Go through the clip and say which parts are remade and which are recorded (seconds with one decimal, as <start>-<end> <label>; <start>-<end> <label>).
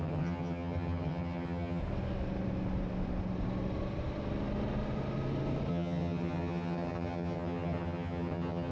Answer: 0.0-1.8 remade; 1.8-5.7 recorded; 5.7-8.7 remade